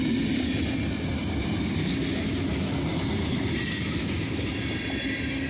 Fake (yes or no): no